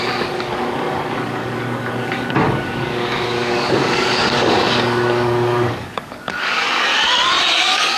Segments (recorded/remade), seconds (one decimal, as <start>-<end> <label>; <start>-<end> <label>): 0.0-6.9 remade; 6.9-7.5 recorded; 7.5-8.0 remade